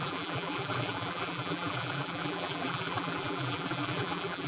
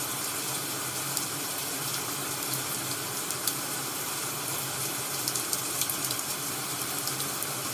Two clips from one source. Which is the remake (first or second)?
first